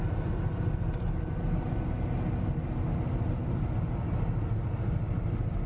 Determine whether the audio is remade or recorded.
recorded